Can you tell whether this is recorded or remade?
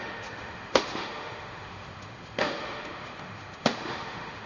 remade